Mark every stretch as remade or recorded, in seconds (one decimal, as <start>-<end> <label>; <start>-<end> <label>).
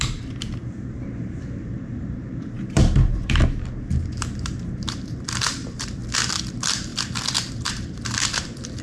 0.0-6.0 remade; 6.0-6.5 recorded; 6.5-6.9 remade; 6.9-7.5 recorded; 7.5-8.8 remade